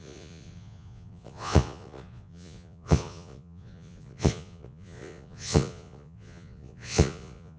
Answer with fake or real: fake